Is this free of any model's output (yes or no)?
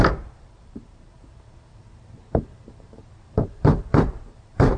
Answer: no